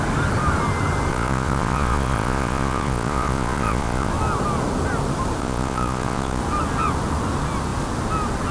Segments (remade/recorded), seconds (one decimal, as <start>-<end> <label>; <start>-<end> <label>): 0.0-1.1 recorded; 1.1-4.1 remade; 4.1-5.4 recorded; 5.4-6.4 remade; 6.4-8.5 recorded